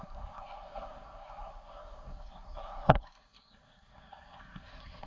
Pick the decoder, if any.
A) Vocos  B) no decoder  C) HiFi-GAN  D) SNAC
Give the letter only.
D